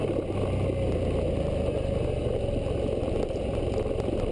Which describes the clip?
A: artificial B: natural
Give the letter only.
B